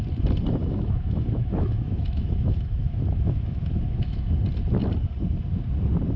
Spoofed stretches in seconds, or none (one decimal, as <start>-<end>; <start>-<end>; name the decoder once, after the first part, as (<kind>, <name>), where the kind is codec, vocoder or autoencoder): 0.6-4.3 (autoencoder, DAC-VAE)